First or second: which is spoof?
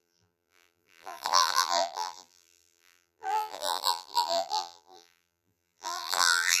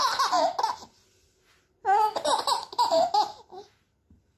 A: first